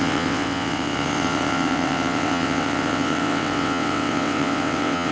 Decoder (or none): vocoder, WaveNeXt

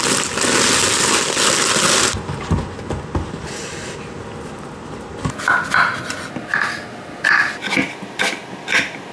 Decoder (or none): none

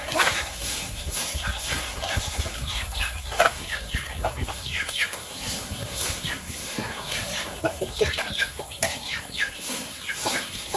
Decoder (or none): codec, SNAC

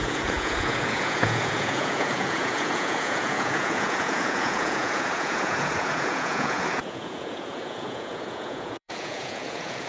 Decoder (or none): vocoder, Vocos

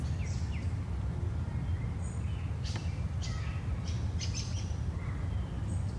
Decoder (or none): none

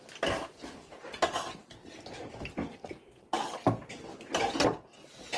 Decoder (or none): none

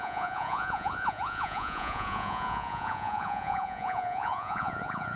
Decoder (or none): vocoder, Vocos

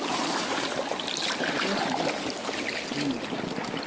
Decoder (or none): none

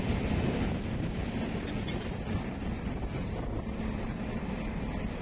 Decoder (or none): none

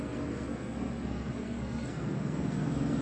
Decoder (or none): codec, SNAC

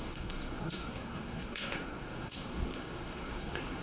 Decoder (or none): codec, SNAC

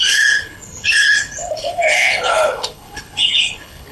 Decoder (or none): codec, HILCodec